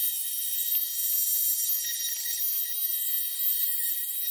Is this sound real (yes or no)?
yes